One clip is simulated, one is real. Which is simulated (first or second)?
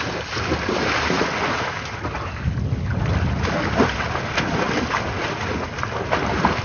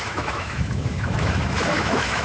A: second